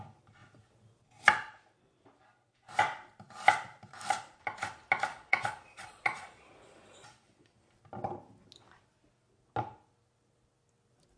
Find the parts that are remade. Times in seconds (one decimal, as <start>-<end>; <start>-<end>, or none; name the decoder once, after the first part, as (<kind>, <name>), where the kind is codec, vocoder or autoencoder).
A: 5.1-7.7 (vocoder, Vocos)